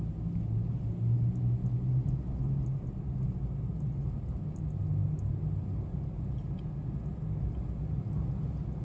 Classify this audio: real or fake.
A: real